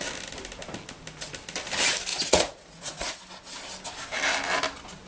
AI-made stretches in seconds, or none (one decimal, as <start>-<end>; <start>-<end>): 2.1-3.1